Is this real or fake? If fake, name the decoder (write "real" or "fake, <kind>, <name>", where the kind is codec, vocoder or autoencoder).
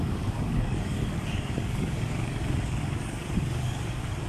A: fake, codec, DAC